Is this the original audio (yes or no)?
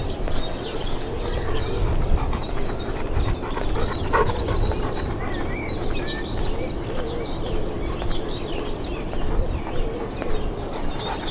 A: yes